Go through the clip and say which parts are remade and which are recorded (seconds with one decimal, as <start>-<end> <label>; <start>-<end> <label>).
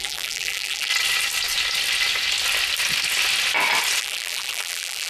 0.0-0.9 remade; 0.9-4.0 recorded; 4.0-5.1 remade